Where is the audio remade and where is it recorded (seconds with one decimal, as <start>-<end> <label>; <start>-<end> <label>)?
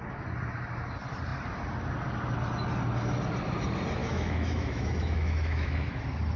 0.0-4.0 recorded; 4.0-6.0 remade; 6.0-6.4 recorded